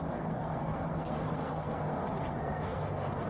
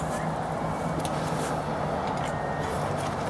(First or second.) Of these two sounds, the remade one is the first